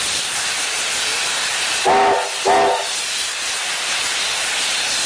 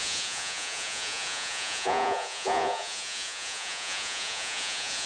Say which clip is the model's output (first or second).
second